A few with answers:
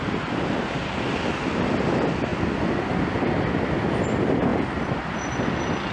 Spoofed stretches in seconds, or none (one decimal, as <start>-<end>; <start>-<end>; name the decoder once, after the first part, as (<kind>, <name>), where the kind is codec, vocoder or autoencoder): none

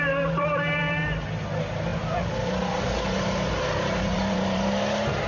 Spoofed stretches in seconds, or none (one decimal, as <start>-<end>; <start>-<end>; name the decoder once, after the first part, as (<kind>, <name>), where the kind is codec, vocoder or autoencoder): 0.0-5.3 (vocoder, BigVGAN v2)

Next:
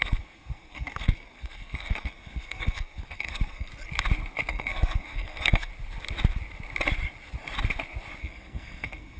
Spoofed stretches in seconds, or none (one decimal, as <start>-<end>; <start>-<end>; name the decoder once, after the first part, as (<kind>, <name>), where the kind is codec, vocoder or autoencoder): 0.0-3.7 (codec, SNAC); 4.5-5.7; 8.2-9.2

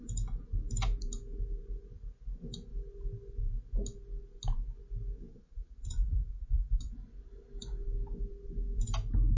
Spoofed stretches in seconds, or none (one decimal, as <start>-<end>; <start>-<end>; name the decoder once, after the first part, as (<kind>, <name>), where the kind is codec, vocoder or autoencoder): 5.3-6.9 (vocoder, Vocos)